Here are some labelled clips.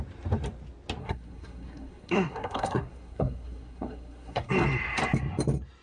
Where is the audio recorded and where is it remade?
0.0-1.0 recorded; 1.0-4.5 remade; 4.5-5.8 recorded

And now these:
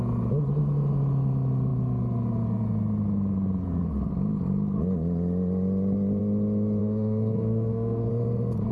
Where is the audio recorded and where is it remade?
0.0-6.8 recorded; 6.8-8.1 remade; 8.1-8.7 recorded

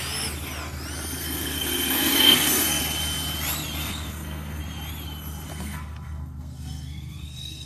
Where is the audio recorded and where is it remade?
0.0-1.2 recorded; 1.2-2.8 remade; 2.8-3.8 recorded; 3.8-4.6 remade; 4.6-5.5 recorded; 5.5-7.7 remade

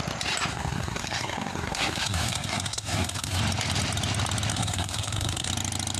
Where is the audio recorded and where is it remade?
0.0-0.5 recorded; 0.5-3.4 remade; 3.4-4.5 recorded; 4.5-5.5 remade; 5.5-6.0 recorded

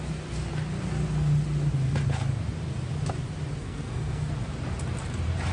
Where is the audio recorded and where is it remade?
0.0-3.6 recorded; 3.6-4.3 remade; 4.3-5.5 recorded